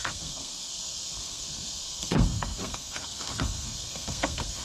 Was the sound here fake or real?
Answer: fake